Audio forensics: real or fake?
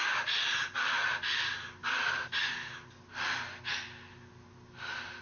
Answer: real